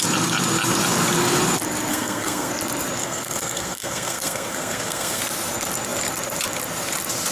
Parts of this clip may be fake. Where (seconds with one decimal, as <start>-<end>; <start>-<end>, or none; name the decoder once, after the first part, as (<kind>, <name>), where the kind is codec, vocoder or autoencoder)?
1.9-2.5 (codec, SNAC); 3.0-5.2